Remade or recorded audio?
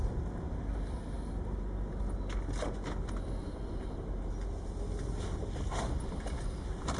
recorded